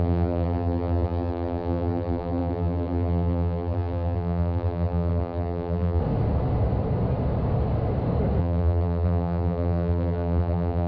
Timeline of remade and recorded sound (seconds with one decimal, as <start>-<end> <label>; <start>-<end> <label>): 0.0-6.0 remade; 6.0-8.4 recorded; 8.4-10.9 remade